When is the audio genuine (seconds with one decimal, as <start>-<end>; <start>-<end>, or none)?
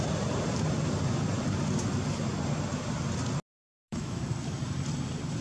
0.0-3.5; 4.2-5.4